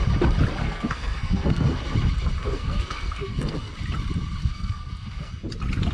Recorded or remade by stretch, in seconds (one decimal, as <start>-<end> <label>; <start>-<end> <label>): 0.0-0.6 recorded; 0.6-1.8 remade; 1.8-2.4 recorded; 2.4-3.7 remade; 3.7-4.4 recorded; 4.4-5.3 remade; 5.3-5.9 recorded